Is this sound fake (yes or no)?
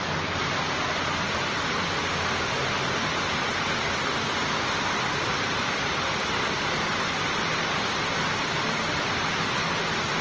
no